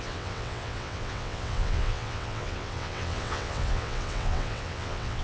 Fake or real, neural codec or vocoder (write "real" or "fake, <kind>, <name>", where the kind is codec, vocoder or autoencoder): fake, vocoder, WaveNeXt